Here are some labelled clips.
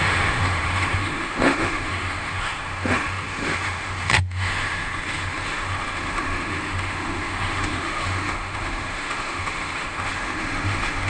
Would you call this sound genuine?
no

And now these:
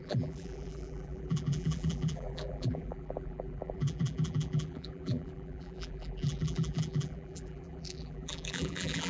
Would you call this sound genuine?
no